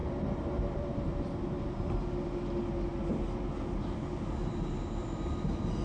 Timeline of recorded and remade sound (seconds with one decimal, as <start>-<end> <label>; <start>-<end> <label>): 0.0-2.0 remade; 2.0-5.8 recorded